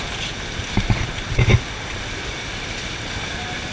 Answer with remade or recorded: recorded